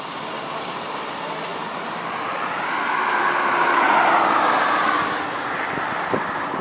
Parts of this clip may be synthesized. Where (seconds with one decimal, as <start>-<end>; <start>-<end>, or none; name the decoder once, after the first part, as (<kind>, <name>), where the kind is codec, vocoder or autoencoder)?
none